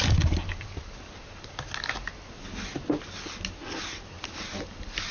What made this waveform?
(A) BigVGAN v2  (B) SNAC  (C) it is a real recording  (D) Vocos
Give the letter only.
C